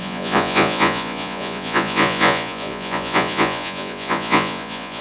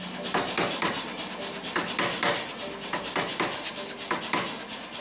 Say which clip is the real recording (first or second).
second